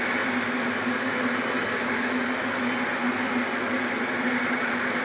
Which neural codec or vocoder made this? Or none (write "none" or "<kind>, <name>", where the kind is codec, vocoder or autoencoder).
none